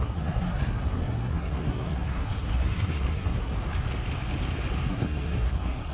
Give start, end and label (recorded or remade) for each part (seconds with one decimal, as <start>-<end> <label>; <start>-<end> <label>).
0.0-3.5 remade; 3.5-4.9 recorded; 4.9-5.9 remade

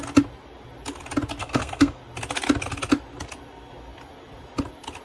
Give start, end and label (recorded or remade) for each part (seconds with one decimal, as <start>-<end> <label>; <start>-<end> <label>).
0.0-1.4 recorded; 1.4-2.0 remade; 2.0-5.0 recorded

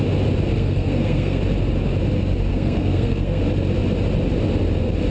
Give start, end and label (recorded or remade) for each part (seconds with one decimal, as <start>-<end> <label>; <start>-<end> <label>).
0.0-0.5 recorded; 0.5-1.4 remade; 1.4-2.5 recorded; 2.5-3.4 remade; 3.4-5.1 recorded

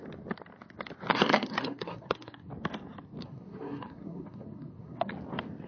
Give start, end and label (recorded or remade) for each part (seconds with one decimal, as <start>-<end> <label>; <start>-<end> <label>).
0.0-1.1 recorded; 1.1-2.5 remade; 2.5-3.2 recorded; 3.2-5.1 remade; 5.1-5.7 recorded